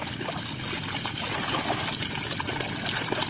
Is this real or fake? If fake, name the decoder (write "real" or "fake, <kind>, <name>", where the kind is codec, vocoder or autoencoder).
real